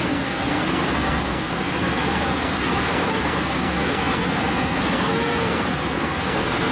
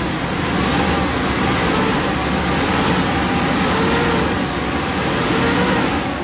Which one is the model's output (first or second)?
first